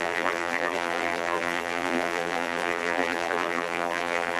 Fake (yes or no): yes